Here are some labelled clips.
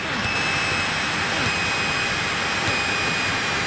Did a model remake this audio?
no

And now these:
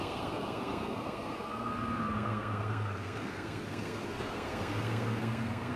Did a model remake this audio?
yes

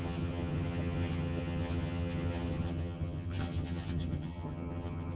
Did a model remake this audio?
yes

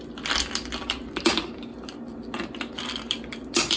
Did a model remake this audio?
no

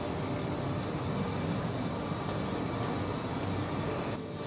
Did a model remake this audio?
no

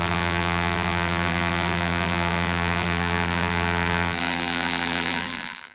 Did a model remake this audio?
yes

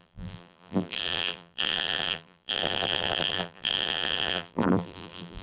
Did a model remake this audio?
yes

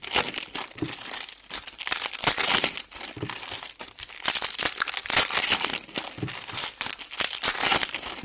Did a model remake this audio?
no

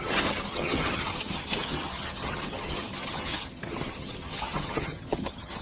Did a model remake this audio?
yes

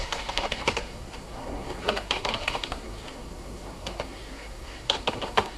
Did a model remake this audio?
yes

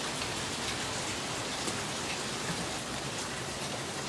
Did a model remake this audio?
no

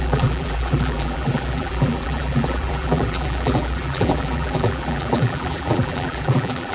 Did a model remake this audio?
yes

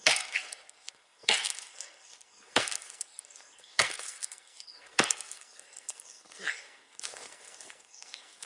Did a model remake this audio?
yes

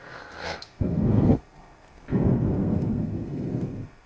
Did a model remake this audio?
yes